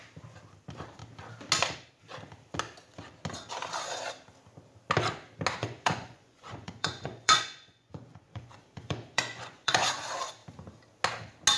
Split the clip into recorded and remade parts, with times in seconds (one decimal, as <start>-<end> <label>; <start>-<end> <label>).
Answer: 0.0-5.6 recorded; 5.6-10.0 remade; 10.0-11.6 recorded

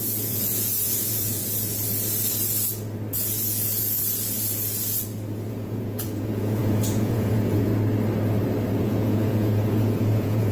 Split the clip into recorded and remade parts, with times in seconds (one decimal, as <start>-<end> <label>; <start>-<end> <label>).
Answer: 0.0-1.4 remade; 1.4-5.5 recorded; 5.5-7.7 remade; 7.7-8.8 recorded; 8.8-10.5 remade

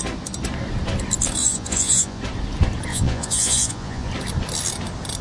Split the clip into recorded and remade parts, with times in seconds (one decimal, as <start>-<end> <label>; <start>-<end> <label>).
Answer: 0.0-1.4 recorded; 1.4-2.2 remade; 2.2-2.9 recorded; 2.9-4.1 remade; 4.1-5.2 recorded

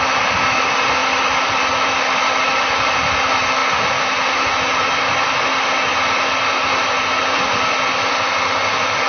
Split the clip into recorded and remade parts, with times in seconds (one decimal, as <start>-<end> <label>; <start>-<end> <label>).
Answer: 0.0-9.1 recorded

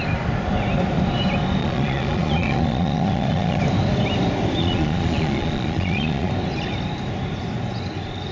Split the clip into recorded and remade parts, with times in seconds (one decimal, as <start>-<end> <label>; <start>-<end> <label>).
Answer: 0.0-1.6 recorded; 1.6-3.6 remade; 3.6-4.6 recorded; 4.6-6.3 remade; 6.3-8.3 recorded

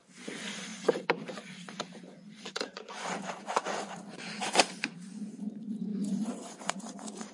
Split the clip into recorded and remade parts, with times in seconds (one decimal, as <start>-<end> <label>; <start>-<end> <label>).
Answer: 0.0-7.3 remade